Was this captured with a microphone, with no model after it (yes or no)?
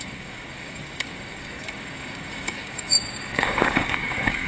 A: no